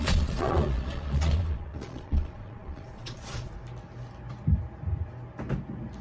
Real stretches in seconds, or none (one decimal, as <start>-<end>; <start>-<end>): 3.5-6.0